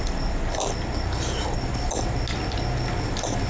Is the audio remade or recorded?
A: recorded